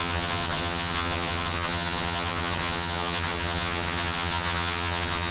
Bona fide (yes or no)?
no